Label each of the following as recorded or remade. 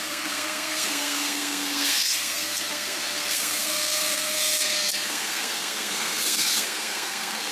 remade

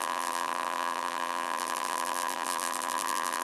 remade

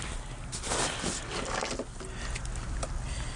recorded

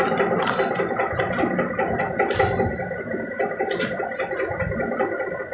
recorded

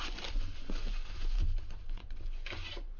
remade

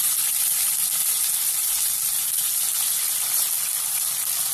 recorded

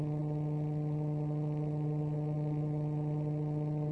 recorded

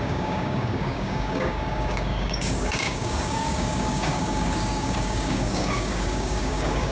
remade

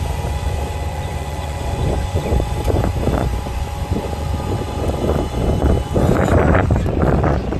remade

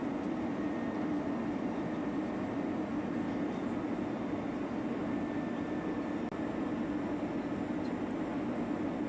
recorded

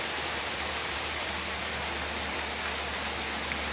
remade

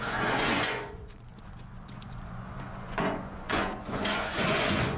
remade